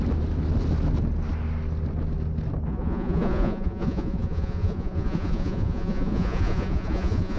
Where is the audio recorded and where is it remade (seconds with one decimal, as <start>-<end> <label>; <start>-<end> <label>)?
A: 0.0-2.7 recorded; 2.7-7.4 remade